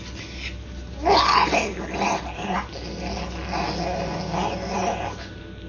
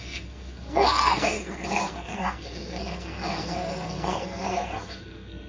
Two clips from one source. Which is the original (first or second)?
first